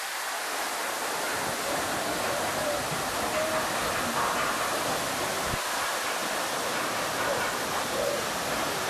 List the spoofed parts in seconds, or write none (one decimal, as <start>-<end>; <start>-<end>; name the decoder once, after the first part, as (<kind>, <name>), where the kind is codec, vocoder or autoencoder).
none